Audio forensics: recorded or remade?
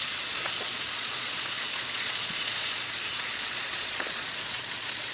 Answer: remade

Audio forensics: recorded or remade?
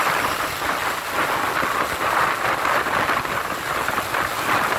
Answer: recorded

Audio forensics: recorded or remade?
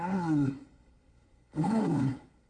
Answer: remade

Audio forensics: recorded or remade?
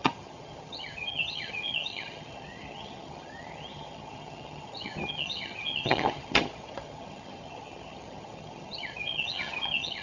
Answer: remade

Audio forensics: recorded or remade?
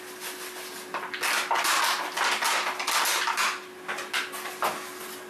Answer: recorded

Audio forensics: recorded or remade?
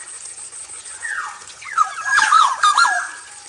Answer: remade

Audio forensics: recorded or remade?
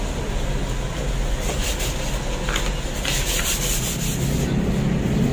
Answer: recorded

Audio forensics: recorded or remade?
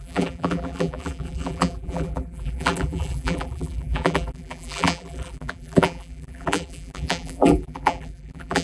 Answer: remade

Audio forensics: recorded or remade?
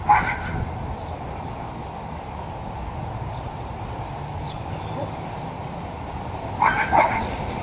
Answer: remade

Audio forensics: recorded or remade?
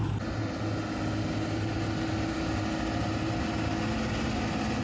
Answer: recorded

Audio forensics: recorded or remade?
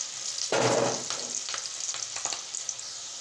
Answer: recorded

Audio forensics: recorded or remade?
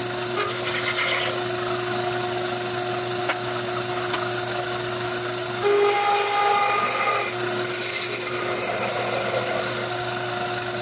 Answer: recorded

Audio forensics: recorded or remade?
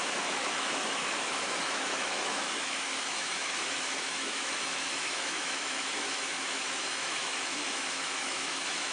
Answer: remade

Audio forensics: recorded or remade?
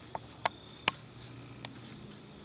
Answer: recorded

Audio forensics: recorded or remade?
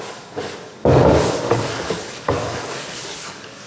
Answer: remade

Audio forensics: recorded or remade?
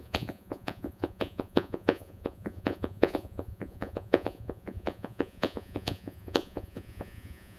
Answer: remade